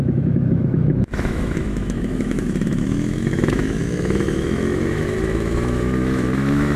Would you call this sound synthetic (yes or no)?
yes